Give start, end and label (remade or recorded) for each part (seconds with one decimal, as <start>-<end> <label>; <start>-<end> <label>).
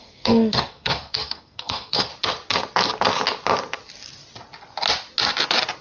0.0-2.1 remade; 2.1-5.8 recorded